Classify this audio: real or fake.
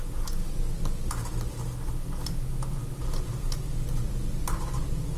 real